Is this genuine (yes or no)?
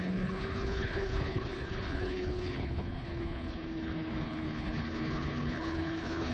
no